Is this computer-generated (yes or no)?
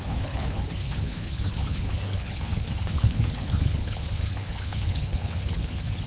yes